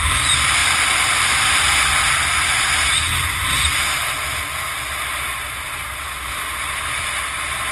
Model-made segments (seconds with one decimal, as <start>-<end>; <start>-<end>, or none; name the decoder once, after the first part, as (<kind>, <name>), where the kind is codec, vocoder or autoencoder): none